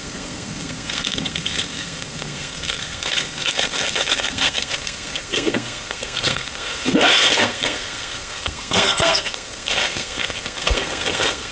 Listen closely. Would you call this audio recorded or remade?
remade